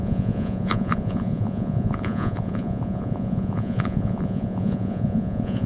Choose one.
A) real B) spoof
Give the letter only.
B